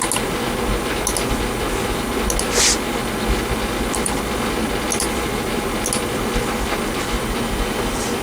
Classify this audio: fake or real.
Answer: real